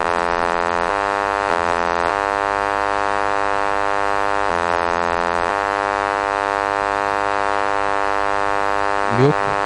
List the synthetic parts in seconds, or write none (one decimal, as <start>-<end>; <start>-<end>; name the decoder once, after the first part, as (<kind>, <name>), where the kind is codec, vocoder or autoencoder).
0.0-0.9 (vocoder, BigVGAN v2); 1.5-2.1; 4.5-5.5